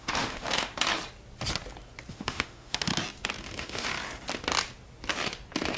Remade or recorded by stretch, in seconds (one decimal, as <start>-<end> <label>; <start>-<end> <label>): 0.0-0.7 remade; 0.7-2.1 recorded; 2.1-2.9 remade; 2.9-3.4 recorded; 3.4-3.9 remade; 3.9-5.8 recorded